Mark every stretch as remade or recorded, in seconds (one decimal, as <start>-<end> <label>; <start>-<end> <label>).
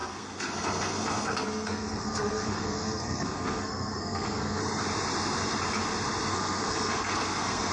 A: 0.0-4.6 remade; 4.6-6.3 recorded; 6.3-7.7 remade